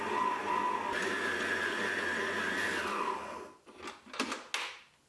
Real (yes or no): yes